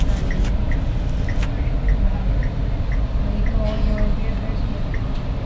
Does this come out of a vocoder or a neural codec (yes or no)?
no